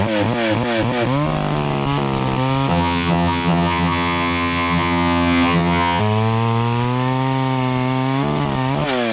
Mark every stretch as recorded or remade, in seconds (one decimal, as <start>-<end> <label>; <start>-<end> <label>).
0.0-2.7 recorded; 2.7-6.0 remade; 6.0-9.1 recorded